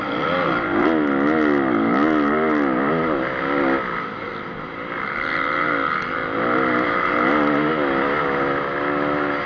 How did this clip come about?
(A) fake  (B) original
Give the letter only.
B